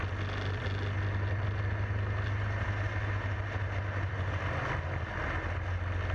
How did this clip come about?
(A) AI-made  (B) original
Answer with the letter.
B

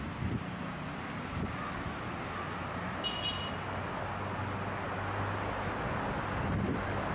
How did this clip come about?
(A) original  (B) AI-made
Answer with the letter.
A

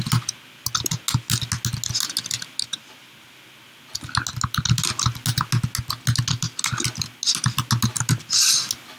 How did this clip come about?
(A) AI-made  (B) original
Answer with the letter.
B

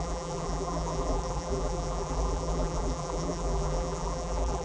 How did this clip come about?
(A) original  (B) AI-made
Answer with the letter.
B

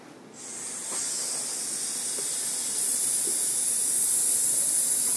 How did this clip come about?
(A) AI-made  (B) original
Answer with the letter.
B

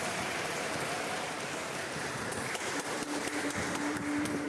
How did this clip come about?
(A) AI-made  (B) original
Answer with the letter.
A